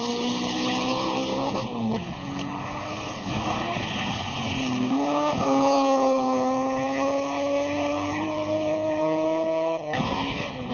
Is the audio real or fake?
fake